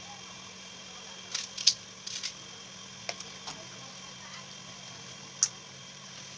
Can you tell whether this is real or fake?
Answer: real